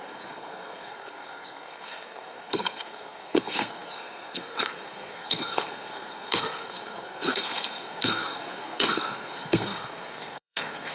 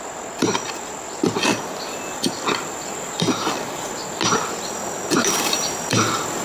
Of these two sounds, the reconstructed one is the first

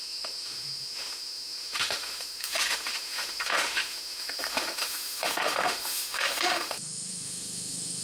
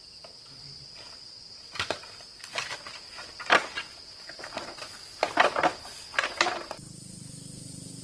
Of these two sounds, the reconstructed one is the first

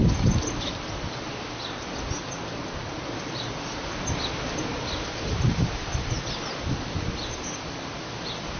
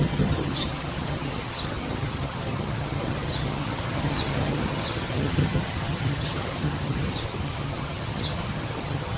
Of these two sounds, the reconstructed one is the second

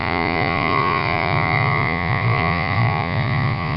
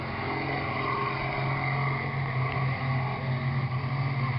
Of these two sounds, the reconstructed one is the first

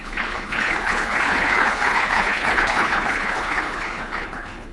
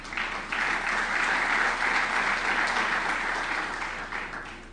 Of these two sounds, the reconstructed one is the first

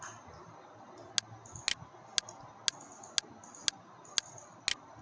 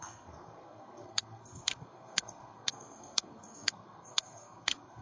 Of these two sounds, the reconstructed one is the second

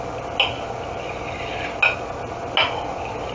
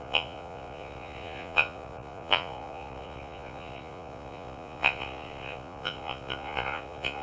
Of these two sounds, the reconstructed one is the second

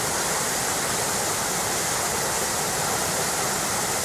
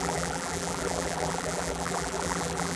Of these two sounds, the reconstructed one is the second